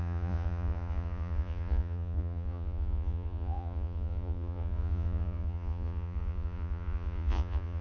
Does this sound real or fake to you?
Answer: fake